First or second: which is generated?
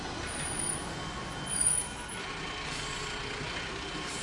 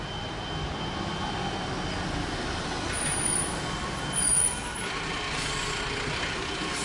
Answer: second